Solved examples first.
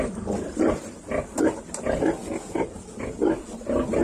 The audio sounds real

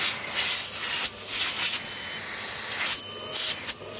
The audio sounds real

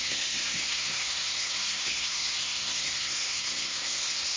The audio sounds fake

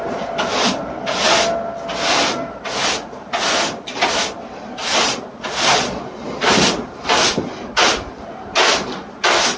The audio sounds real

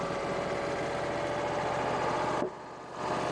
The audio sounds real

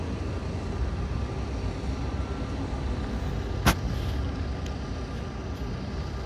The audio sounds real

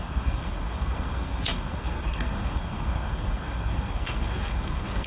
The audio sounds fake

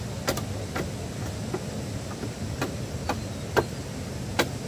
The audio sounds real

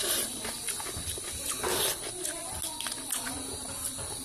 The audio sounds real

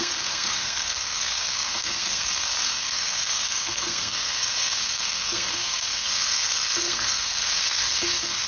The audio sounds fake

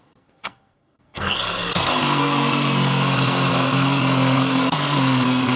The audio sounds fake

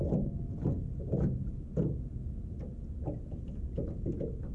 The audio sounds real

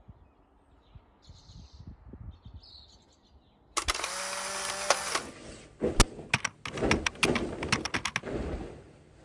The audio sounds real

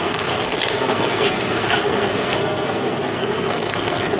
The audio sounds fake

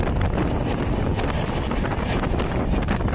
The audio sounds real